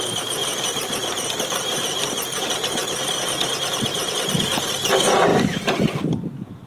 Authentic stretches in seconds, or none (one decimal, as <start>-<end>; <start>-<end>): 0.0-0.4; 3.7-5.3; 6.0-6.7